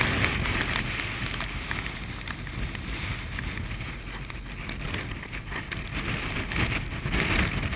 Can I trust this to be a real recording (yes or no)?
yes